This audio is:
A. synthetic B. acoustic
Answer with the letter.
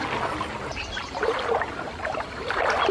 B